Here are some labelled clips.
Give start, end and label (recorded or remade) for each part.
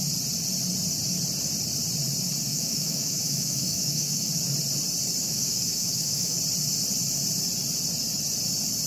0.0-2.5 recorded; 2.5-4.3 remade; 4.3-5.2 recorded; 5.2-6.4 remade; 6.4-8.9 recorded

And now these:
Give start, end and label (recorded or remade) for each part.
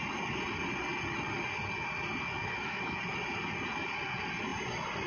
0.0-2.4 recorded; 2.4-3.0 remade; 3.0-5.1 recorded